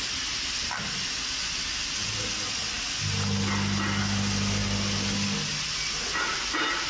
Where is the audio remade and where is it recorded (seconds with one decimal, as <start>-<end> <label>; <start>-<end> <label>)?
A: 0.0-6.9 recorded